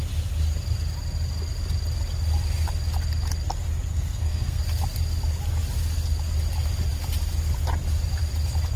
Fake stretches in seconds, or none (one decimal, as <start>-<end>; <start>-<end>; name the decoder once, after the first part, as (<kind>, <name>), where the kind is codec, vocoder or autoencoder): 3.9-4.6 (codec, SNAC)